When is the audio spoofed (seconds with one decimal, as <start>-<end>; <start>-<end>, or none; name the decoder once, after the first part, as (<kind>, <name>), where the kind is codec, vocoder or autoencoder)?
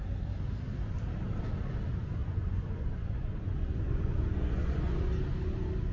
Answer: 2.2-5.1 (vocoder, Vocos)